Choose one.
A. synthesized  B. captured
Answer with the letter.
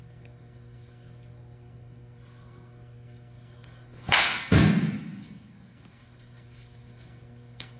A